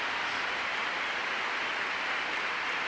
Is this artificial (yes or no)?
no